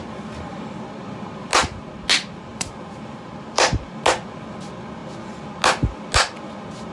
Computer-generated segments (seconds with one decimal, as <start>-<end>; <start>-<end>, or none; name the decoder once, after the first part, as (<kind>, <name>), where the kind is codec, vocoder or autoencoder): 1.6-2.1 (vocoder, BigVGAN v2); 2.5-3.9